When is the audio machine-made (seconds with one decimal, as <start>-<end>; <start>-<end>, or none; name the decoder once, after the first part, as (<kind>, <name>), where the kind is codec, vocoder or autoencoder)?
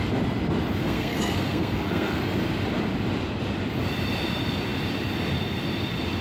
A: 0.8-2.2 (codec, SNAC)